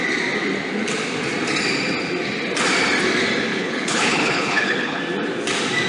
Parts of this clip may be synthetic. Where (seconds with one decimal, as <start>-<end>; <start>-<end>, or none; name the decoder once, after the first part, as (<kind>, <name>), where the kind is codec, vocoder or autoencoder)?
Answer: 3.5-5.0 (codec, HILCodec)